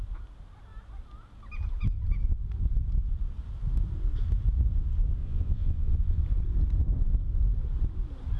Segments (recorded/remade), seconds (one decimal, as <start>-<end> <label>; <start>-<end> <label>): 0.0-5.2 recorded; 5.2-6.2 remade; 6.2-8.4 recorded

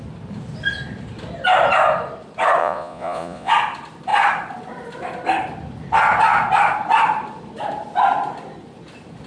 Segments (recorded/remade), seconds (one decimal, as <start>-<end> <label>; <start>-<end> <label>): 0.0-2.6 recorded; 2.6-3.5 remade; 3.5-9.3 recorded

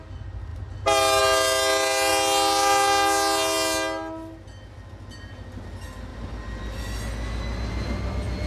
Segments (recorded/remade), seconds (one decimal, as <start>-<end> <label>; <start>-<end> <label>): 0.0-8.5 recorded

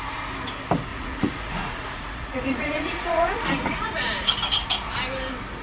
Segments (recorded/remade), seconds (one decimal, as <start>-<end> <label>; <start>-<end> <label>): 0.0-0.9 recorded; 0.9-4.3 remade; 4.3-5.6 recorded

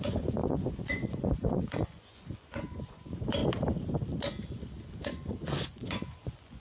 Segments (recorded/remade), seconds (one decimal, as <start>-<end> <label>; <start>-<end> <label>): 0.0-3.4 remade; 3.4-4.9 recorded; 4.9-6.6 remade